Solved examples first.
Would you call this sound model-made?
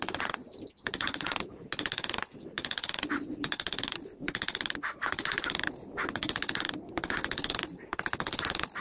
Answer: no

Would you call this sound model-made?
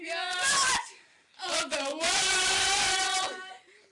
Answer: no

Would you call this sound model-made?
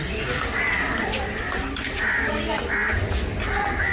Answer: no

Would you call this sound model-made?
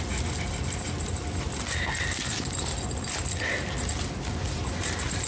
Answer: no